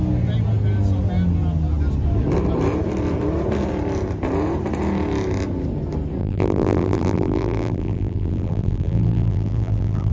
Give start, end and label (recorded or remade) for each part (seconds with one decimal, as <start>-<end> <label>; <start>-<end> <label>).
0.0-6.2 recorded; 6.2-10.1 remade